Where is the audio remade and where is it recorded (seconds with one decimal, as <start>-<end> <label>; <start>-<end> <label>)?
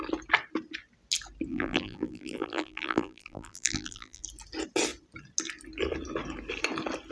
0.0-1.5 recorded; 1.5-4.2 remade; 4.2-7.1 recorded